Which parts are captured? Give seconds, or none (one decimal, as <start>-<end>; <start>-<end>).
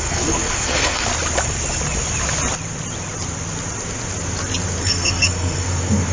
1.1-4.8